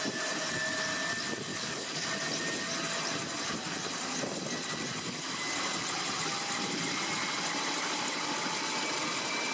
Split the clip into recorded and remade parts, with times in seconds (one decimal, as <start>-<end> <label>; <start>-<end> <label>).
0.0-1.5 recorded; 1.5-2.1 remade; 2.1-9.5 recorded